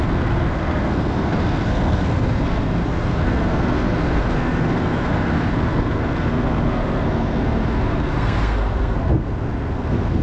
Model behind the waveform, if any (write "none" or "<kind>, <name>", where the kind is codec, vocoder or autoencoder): codec, SNAC